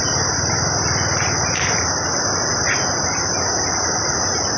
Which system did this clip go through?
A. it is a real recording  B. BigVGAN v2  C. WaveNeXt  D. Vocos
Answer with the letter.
A